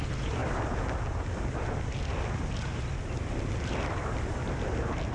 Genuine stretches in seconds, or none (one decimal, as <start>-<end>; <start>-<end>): none